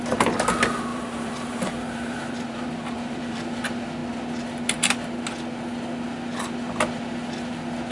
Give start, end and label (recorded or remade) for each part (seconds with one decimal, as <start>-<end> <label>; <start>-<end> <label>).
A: 0.0-0.9 recorded; 0.9-3.6 remade; 3.6-7.9 recorded

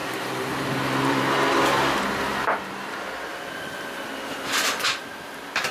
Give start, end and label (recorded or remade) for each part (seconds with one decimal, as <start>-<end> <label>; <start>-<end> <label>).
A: 0.0-1.2 remade; 1.2-5.7 recorded

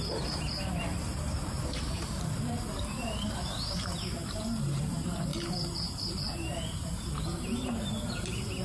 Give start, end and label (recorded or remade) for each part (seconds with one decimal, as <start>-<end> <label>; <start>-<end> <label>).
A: 0.0-8.6 remade